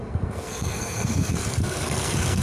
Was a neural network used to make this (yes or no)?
yes